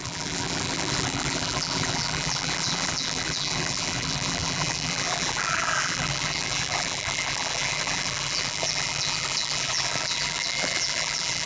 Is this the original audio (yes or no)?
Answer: no